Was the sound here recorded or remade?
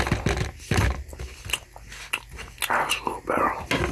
recorded